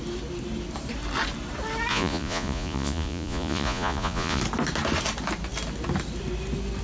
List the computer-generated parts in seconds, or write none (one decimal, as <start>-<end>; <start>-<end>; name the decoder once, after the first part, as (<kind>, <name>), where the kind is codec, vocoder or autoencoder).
1.9-4.4 (vocoder, Vocos)